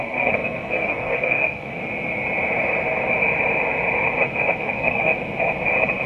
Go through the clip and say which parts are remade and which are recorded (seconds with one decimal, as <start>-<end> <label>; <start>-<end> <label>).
0.0-1.8 remade; 1.8-4.6 recorded; 4.6-5.1 remade; 5.1-6.1 recorded